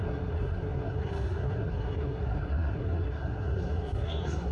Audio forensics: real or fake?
fake